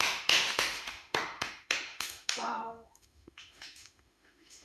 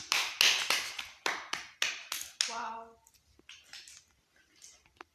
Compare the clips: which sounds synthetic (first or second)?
first